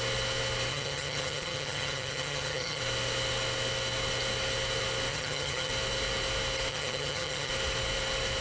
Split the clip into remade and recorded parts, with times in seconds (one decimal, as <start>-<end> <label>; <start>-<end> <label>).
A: 0.0-0.7 recorded; 0.7-2.8 remade; 2.8-5.1 recorded; 5.1-5.7 remade; 5.7-6.7 recorded; 6.7-7.5 remade; 7.5-8.4 recorded